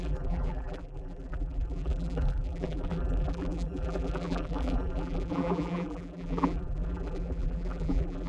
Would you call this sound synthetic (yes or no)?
yes